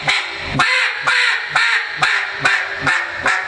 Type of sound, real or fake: real